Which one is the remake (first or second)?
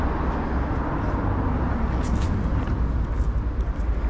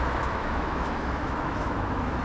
second